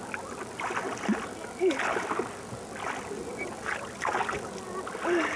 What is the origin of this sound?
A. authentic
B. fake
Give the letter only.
A